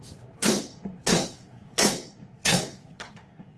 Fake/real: fake